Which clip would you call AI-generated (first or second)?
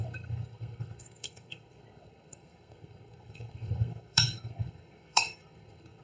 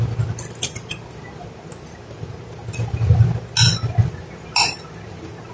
first